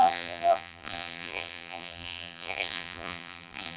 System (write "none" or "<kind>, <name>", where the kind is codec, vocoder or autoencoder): vocoder, BigVGAN v2